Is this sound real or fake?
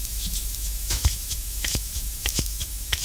fake